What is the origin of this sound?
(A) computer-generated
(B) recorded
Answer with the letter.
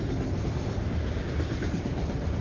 A